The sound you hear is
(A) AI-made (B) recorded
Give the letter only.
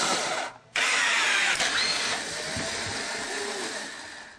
B